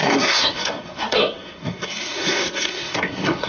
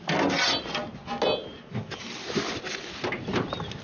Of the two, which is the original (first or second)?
second